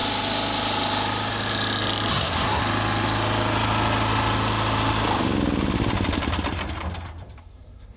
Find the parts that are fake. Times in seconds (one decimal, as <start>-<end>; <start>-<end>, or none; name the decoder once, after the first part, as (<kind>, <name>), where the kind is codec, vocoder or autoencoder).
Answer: 2.1-2.6 (codec, SNAC); 7.4-8.0

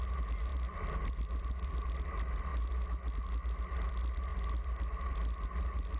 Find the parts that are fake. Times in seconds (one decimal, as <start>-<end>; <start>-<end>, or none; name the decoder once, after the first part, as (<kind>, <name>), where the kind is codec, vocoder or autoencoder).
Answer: none

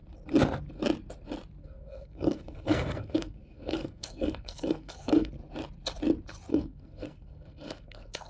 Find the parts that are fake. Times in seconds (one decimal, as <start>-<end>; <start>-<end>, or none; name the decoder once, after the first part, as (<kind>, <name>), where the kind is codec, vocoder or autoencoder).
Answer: 1.6-5.3 (codec, SNAC); 6.5-8.3

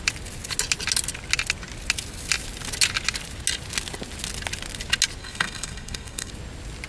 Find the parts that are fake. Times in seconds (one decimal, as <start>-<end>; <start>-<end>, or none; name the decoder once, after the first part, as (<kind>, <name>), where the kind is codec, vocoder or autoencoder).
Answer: 5.2-6.3 (codec, SNAC)

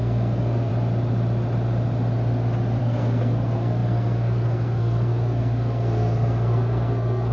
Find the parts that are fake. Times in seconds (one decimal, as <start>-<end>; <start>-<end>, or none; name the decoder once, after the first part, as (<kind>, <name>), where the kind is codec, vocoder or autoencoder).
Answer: 0.0-0.7 (codec, SNAC); 2.8-7.3